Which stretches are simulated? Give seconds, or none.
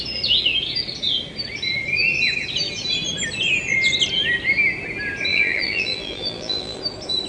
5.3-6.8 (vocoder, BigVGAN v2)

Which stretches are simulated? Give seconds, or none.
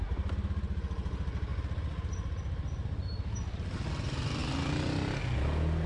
none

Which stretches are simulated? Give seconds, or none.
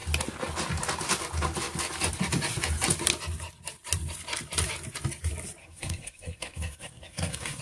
5.6-7.6 (codec, SNAC)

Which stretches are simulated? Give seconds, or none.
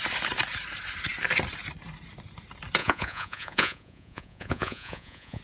2.8-5.4 (vocoder, Vocos)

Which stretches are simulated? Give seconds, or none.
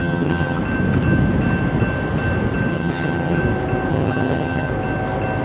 0.0-0.6 (vocoder, HiFi-GAN); 2.7-3.4; 3.9-4.7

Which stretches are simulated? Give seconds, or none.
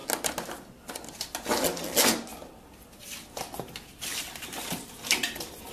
none